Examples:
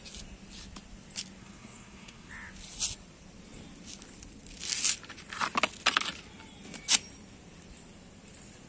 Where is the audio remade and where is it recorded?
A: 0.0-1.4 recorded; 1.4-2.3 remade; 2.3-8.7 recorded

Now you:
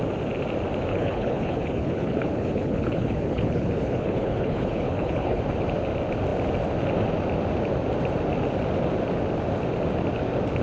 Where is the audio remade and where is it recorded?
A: 0.0-0.9 recorded; 0.9-5.4 remade; 5.4-10.6 recorded

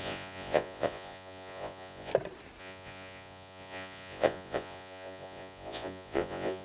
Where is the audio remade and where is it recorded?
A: 0.0-2.1 remade; 2.1-2.6 recorded; 2.6-6.6 remade

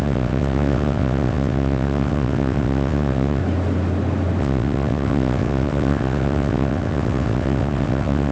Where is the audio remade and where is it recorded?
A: 0.0-3.4 remade; 3.4-4.4 recorded; 4.4-8.3 remade

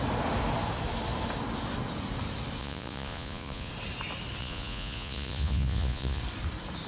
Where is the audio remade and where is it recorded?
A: 0.0-2.6 recorded; 2.6-3.7 remade; 3.7-4.4 recorded; 4.4-6.2 remade; 6.2-6.9 recorded

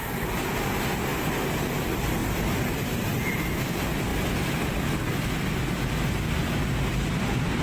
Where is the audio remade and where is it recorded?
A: 0.0-7.6 recorded

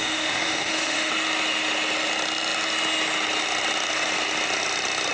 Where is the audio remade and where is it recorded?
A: 0.0-1.1 remade; 1.1-5.1 recorded

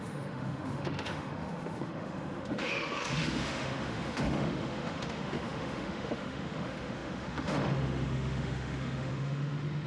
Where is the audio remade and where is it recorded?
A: 0.0-9.9 remade